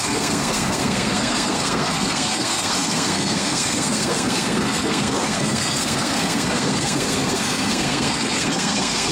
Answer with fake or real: fake